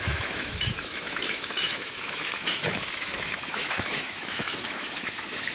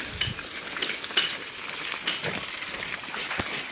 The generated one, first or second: first